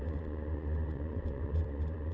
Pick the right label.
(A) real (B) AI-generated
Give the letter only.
B